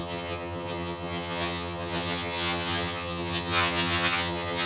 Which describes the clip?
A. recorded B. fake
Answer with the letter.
B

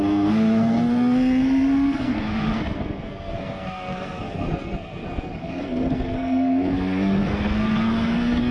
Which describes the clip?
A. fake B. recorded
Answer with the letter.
A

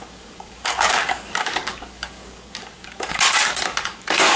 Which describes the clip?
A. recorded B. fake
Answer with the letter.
B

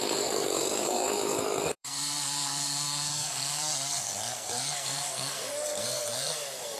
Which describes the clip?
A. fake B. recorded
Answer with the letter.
A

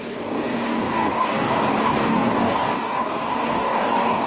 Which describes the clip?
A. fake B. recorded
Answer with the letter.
A